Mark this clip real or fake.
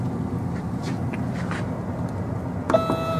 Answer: real